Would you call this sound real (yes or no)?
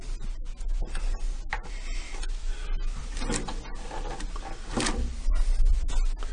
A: yes